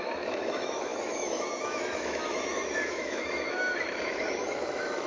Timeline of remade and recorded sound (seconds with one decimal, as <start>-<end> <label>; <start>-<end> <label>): 0.0-5.1 remade